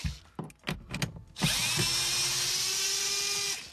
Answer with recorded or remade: recorded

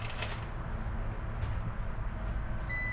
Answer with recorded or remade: recorded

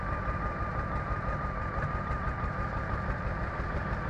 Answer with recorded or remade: remade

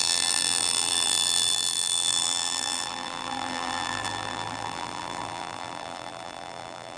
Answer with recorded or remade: remade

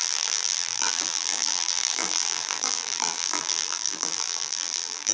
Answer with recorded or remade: remade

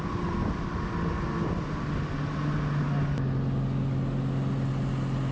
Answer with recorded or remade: recorded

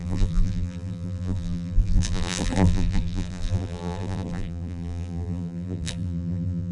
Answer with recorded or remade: remade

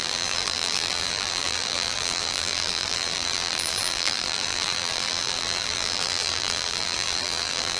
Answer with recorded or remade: remade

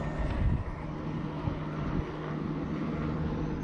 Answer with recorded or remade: recorded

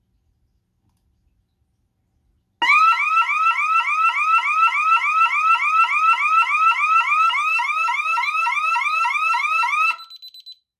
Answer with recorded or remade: recorded